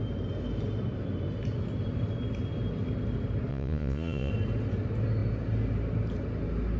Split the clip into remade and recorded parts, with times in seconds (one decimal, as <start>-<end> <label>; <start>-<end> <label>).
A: 0.0-3.5 recorded; 3.5-4.3 remade; 4.3-6.8 recorded

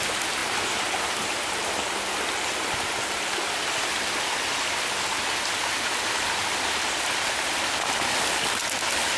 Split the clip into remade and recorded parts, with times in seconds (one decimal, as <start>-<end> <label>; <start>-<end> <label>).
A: 0.0-9.2 recorded

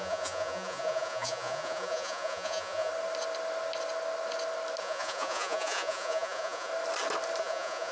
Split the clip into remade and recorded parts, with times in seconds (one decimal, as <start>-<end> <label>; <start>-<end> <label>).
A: 0.0-2.9 remade; 2.9-4.8 recorded; 4.8-6.7 remade; 6.7-7.4 recorded; 7.4-7.9 remade